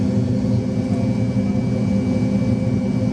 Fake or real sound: real